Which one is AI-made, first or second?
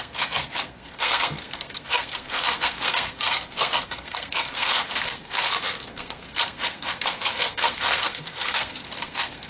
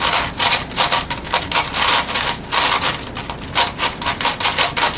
first